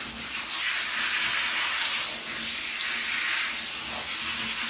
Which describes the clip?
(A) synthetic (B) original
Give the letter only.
B